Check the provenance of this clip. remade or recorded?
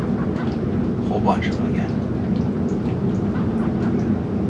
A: recorded